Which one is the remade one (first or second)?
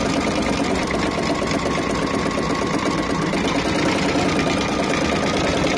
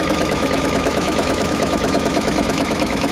second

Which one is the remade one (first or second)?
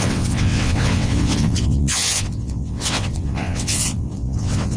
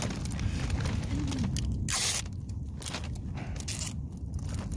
first